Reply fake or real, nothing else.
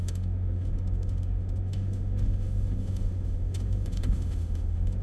fake